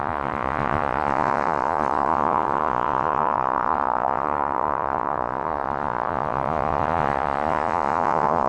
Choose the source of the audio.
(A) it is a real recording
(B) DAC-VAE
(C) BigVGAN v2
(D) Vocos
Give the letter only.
D